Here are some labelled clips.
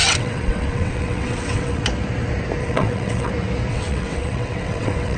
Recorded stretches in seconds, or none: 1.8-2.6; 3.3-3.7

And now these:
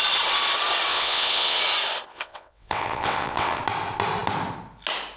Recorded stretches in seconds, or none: 0.0-0.9; 1.6-2.1; 3.6-5.2

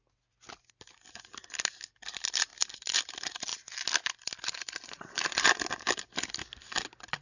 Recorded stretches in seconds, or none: 0.0-7.2

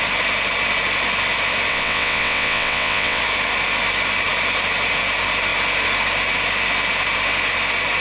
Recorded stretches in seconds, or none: 0.0-1.7; 3.2-8.0